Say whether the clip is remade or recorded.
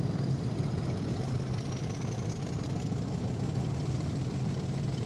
recorded